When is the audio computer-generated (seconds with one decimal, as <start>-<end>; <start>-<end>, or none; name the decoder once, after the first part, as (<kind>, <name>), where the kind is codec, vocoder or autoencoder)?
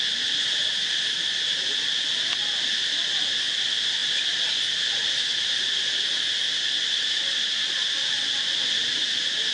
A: none